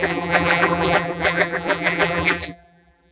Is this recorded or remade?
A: remade